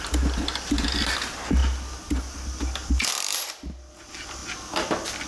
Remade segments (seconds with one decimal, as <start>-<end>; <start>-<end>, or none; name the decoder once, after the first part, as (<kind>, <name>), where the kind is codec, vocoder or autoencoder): none